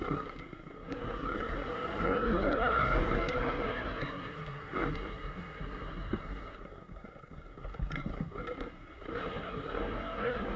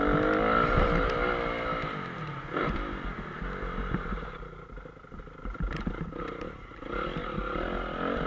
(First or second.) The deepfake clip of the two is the first